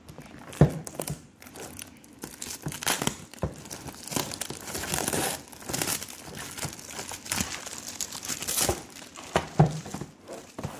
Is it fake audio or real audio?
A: fake